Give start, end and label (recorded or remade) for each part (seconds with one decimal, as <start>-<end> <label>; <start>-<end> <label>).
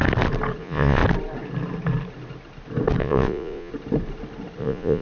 0.0-0.6 recorded; 0.6-1.0 remade; 1.0-3.0 recorded; 3.0-3.7 remade; 3.7-4.6 recorded; 4.6-5.0 remade